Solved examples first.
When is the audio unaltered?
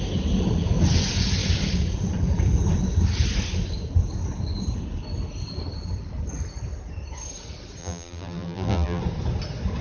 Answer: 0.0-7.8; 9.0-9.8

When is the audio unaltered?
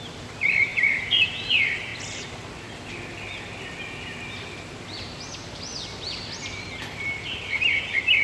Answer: 1.9-6.8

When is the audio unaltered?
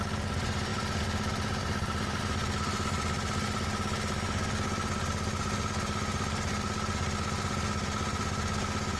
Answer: 0.0-0.7; 2.2-9.0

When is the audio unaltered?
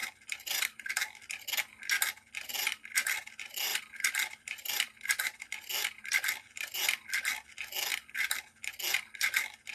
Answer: 0.9-3.7; 7.1-7.9; 8.7-9.7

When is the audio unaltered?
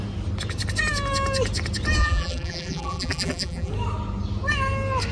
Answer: 0.0-2.0; 3.7-5.1